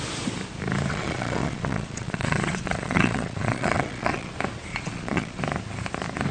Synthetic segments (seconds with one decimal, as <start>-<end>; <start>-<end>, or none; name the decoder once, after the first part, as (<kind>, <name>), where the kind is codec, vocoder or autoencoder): 0.9-4.3 (vocoder, Vocos); 4.7-5.4